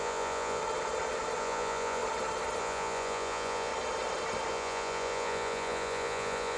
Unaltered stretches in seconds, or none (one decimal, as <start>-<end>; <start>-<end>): 0.6-1.4; 2.0-2.6; 3.7-4.5

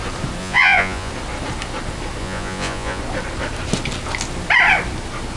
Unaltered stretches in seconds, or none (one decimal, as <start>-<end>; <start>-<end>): 0.0-0.4; 1.1-2.2; 3.0-5.4